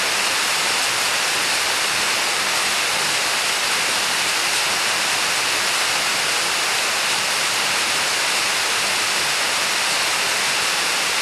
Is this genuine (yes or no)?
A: yes